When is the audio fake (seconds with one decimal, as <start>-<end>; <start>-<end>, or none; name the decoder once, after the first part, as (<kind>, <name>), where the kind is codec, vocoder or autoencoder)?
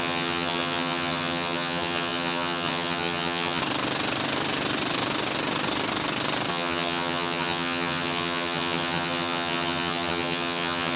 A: 0.0-3.6 (vocoder, HiFi-GAN); 6.5-11.0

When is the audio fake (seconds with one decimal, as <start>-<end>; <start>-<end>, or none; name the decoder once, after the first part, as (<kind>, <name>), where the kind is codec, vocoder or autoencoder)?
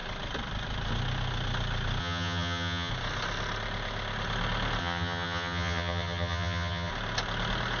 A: 2.0-2.9 (vocoder, HiFi-GAN); 4.8-6.9